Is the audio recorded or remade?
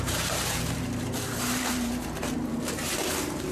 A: remade